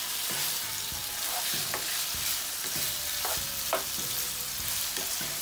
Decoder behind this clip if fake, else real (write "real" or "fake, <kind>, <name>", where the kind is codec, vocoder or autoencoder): fake, vocoder, BigVGAN v2